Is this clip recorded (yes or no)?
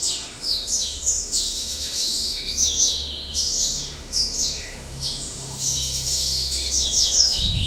no